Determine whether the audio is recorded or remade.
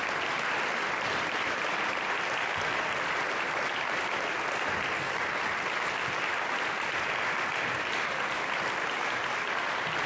recorded